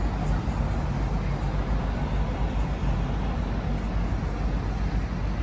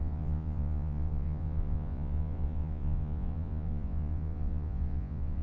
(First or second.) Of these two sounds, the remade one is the second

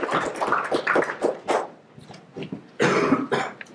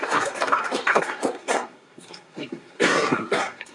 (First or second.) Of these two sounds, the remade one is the second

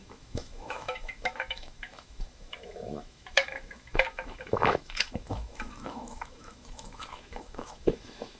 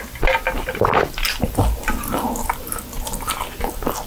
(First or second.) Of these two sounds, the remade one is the first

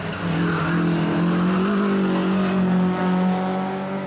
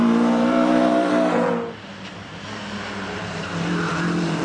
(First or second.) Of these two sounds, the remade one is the second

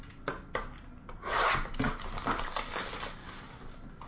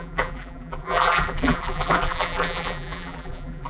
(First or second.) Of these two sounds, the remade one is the second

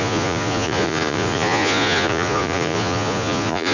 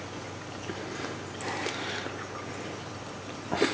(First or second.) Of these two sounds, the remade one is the first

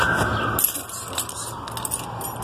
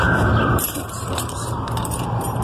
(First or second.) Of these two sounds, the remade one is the second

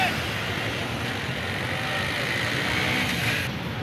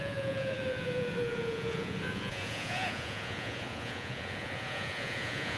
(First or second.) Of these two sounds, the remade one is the second